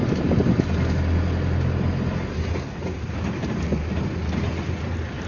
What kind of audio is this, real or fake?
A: real